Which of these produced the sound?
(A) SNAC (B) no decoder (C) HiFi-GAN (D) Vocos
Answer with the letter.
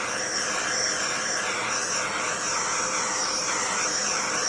B